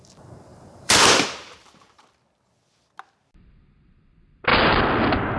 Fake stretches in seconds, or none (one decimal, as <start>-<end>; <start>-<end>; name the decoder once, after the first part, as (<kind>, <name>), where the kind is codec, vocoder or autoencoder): 0.5-2.0 (vocoder, BigVGAN v2)